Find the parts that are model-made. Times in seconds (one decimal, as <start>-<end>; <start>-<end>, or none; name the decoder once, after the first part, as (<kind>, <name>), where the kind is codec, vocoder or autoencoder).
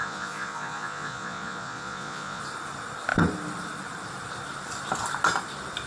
0.0-2.4 (vocoder, Vocos)